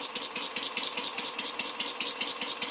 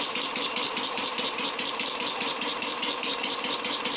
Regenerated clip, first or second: second